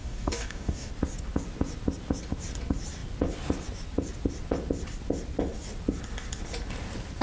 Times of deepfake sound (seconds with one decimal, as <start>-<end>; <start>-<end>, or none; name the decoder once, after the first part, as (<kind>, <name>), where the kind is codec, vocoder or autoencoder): 0.0-0.9 (codec, DAC)

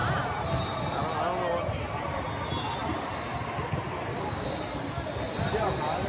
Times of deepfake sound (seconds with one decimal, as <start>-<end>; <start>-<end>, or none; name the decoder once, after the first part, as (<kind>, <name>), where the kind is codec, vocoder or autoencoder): 4.1-4.6 (codec, DAC)